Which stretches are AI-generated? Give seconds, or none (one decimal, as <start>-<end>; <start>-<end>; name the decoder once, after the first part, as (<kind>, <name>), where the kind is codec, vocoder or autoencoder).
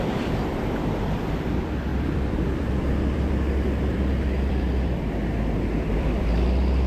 0.0-6.9 (vocoder, BigVGAN v2)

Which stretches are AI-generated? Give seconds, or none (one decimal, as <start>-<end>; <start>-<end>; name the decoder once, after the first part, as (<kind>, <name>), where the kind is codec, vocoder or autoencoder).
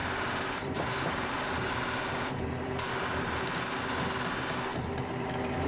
0.0-3.4 (vocoder, BigVGAN v2); 4.7-5.3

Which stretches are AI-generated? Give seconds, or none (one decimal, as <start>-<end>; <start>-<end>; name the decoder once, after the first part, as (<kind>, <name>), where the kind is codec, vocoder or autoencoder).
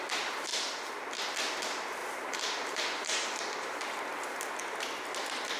2.0-3.4 (vocoder, BigVGAN v2)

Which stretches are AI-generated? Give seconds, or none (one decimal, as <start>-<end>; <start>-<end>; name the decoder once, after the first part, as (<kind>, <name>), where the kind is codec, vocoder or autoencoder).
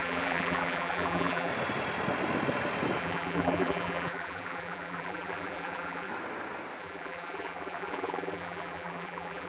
0.0-1.5 (vocoder, BigVGAN v2); 3.0-6.1; 6.8-9.5